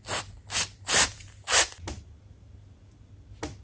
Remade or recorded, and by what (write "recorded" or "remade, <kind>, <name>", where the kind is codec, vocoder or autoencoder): recorded